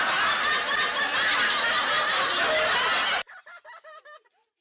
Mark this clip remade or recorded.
recorded